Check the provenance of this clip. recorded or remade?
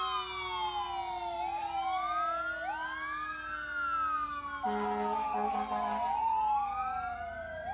recorded